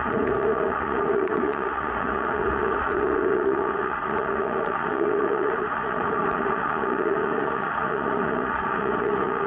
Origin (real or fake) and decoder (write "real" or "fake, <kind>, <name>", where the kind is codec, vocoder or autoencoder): fake, vocoder, Vocos